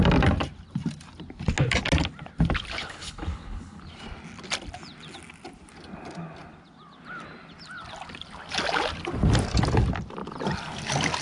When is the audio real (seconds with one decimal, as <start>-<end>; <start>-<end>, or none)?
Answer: 0.0-2.8; 3.8-11.2